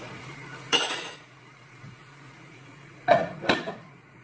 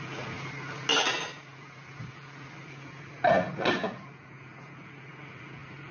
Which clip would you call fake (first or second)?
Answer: first